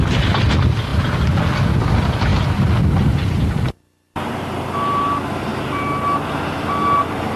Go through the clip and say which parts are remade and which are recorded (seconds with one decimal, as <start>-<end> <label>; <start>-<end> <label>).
0.0-7.4 recorded